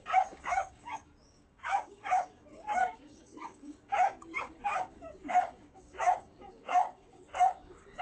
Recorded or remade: remade